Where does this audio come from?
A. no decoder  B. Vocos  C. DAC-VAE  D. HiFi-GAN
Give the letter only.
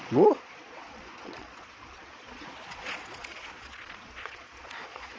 B